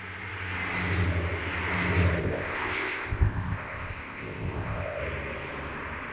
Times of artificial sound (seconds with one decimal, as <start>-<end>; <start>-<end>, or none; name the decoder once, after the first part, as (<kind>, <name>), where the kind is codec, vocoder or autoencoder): 2.2-5.0 (codec, ZipCodec)